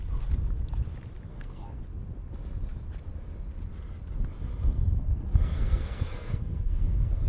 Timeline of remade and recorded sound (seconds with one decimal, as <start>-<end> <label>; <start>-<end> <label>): 0.0-1.3 recorded; 1.3-1.8 remade; 1.8-5.0 recorded; 5.0-7.3 remade